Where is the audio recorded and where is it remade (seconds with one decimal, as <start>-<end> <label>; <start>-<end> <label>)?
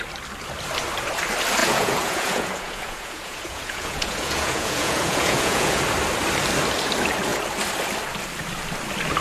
0.0-1.6 recorded; 1.6-5.8 remade; 5.8-9.2 recorded